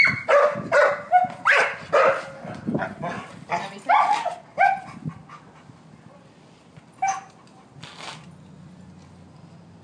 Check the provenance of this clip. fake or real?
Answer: real